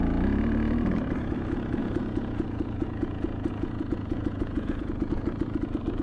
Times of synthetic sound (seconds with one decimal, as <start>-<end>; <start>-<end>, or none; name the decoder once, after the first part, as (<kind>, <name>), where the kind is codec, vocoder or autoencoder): 1.8-5.1 (vocoder, Vocos)